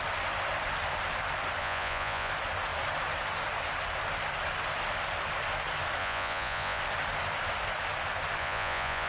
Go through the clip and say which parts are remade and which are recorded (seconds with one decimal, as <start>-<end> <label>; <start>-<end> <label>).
0.0-1.6 recorded; 1.6-2.3 remade; 2.3-6.0 recorded; 6.0-6.8 remade; 6.8-8.4 recorded; 8.4-9.1 remade